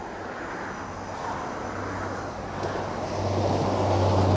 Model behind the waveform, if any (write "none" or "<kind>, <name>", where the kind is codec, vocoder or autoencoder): none